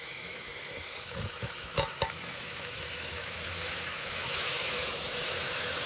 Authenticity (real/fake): fake